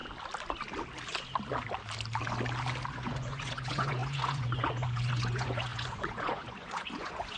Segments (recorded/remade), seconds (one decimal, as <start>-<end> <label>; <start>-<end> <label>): 0.0-2.9 recorded; 2.9-7.4 remade